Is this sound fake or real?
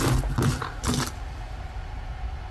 real